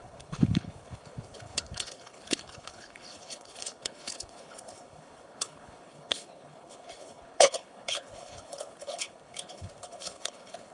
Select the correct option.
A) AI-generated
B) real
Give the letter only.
A